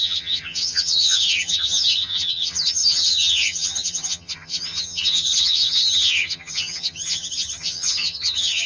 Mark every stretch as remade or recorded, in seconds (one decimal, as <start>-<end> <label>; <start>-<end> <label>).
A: 0.0-8.7 remade